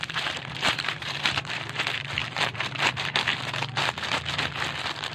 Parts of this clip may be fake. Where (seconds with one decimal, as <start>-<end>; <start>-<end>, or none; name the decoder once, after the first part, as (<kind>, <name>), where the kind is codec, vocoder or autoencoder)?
0.0-3.3 (vocoder, BigVGAN v2)

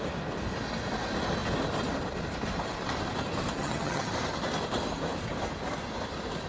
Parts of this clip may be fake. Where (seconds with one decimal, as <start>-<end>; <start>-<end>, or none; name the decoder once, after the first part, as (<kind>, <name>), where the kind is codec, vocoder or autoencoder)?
3.6-4.1 (vocoder, HiFi-GAN)

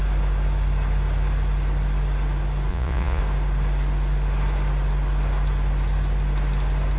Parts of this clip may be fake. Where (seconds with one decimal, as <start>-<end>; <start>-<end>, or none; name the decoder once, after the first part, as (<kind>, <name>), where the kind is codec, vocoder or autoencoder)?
2.7-3.2 (vocoder, Vocos)

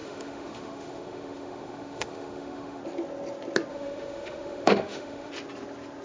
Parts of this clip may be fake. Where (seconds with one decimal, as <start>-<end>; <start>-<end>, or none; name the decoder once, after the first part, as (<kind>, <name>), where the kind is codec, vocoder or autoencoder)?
0.0-2.8 (autoencoder, DAC-VAE); 3.7-5.3